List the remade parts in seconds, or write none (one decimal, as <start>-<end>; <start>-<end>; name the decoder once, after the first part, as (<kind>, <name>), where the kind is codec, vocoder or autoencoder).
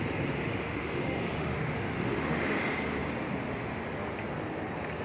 0.4-2.6 (autoencoder, DAC-VAE)